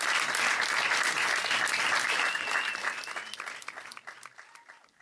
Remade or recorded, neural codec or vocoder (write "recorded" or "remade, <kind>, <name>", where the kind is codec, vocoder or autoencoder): recorded